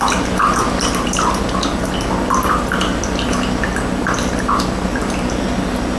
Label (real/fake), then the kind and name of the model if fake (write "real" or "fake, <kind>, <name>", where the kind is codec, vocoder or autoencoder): real